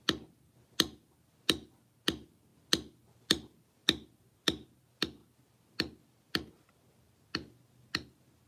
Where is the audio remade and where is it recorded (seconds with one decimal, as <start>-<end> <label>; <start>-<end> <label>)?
0.0-8.5 recorded